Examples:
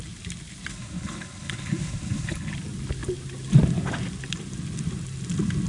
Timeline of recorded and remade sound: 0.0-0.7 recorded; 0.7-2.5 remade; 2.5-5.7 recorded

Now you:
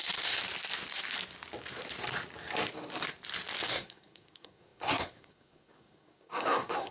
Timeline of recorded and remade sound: 0.0-0.4 remade; 0.4-3.7 recorded; 3.7-6.9 remade